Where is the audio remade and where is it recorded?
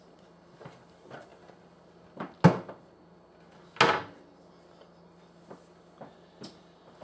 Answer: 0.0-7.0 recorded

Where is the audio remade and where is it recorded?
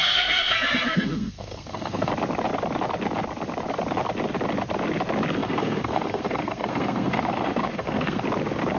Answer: 0.0-2.1 remade; 2.1-5.4 recorded; 5.4-8.2 remade; 8.2-8.8 recorded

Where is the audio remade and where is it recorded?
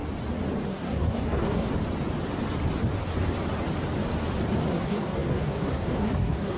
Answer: 0.0-0.7 recorded; 0.7-1.7 remade; 1.7-4.7 recorded; 4.7-6.6 remade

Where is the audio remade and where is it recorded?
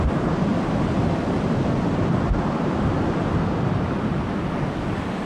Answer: 0.0-5.3 recorded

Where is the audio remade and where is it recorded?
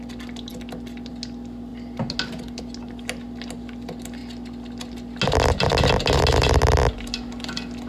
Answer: 0.0-7.9 recorded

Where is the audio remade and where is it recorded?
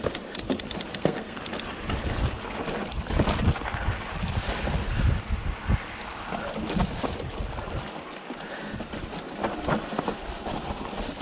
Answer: 0.0-0.9 recorded; 0.9-1.4 remade; 1.4-11.2 recorded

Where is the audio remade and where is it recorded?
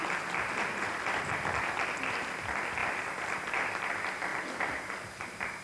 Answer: 0.0-0.5 remade; 0.5-2.8 recorded; 2.8-3.9 remade; 3.9-4.3 recorded; 4.3-5.6 remade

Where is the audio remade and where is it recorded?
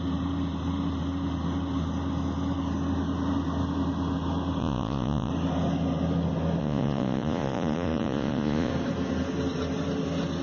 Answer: 0.0-4.6 recorded; 4.6-5.3 remade; 5.3-6.6 recorded; 6.6-8.7 remade; 8.7-10.4 recorded